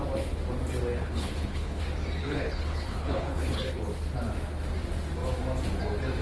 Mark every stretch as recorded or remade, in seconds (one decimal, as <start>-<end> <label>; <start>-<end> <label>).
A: 0.0-1.0 recorded; 1.0-1.8 remade; 1.8-2.2 recorded; 2.2-3.8 remade; 3.8-6.2 recorded